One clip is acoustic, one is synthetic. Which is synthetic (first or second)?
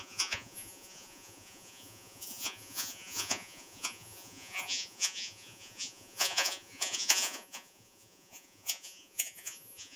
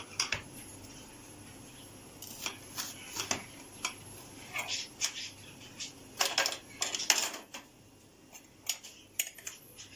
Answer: first